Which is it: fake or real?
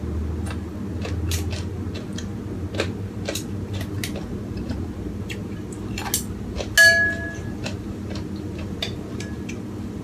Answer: real